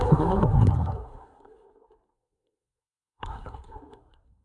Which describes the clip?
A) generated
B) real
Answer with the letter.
A